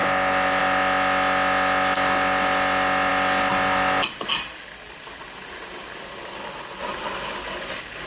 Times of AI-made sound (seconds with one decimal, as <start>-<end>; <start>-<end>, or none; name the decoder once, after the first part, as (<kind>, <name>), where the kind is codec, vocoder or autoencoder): none